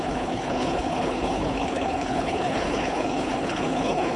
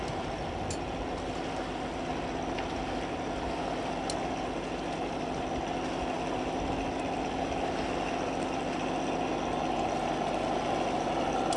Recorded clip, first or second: second